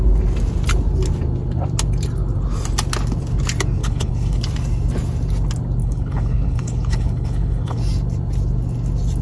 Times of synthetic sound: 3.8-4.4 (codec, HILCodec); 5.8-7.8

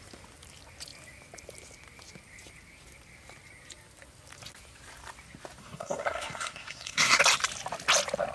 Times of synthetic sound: 5.6-7.2 (codec, SNAC)

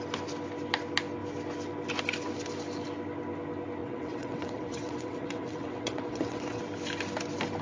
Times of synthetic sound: 3.8-6.6 (vocoder, WaveNeXt)

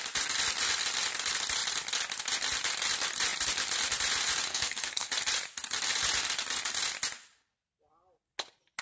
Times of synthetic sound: 4.5-5.1 (codec, SNAC)

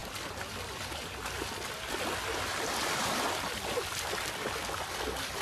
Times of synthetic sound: none

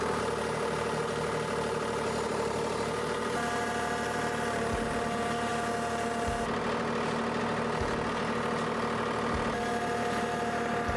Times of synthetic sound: none

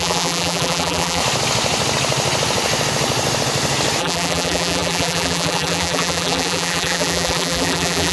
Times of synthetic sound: 0.0-1.2 (vocoder, BigVGAN v2); 4.0-8.1

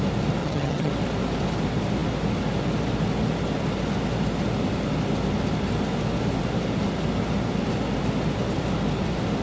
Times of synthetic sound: 0.4-0.9 (vocoder, HiFi-GAN)